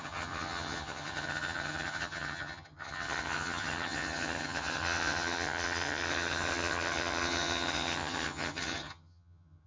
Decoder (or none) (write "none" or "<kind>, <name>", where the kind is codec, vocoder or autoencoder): vocoder, HiFi-GAN